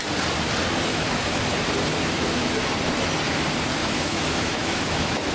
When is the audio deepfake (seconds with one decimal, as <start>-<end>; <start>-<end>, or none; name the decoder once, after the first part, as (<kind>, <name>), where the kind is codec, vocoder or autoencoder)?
0.9-1.4 (autoencoder, DAC-VAE); 2.0-2.5; 3.8-5.3